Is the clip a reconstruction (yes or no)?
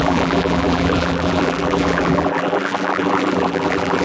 yes